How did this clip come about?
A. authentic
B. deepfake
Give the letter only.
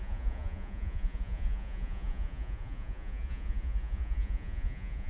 B